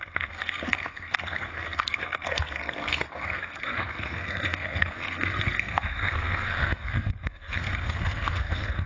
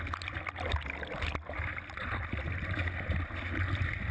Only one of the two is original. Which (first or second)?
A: second